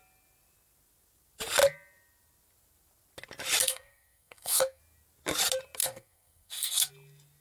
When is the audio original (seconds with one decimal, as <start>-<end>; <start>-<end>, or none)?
0.0-3.6; 4.8-5.8; 6.9-7.4